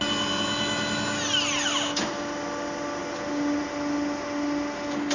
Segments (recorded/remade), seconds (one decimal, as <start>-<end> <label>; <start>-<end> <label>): 0.0-5.1 recorded